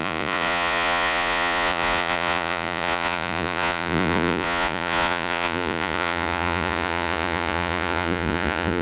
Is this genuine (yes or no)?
no